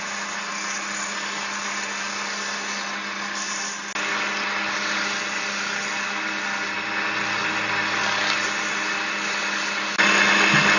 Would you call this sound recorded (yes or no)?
yes